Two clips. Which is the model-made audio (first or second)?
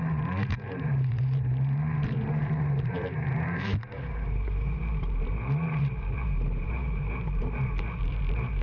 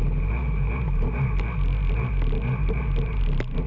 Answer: first